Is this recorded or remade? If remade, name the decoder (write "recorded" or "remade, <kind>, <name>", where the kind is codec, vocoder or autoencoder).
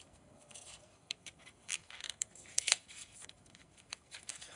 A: remade, codec, SNAC